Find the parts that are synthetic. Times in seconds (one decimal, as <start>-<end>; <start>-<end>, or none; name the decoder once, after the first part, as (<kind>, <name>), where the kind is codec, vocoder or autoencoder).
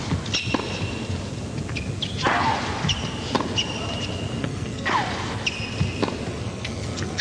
4.4-4.9 (codec, SNAC); 6.3-7.2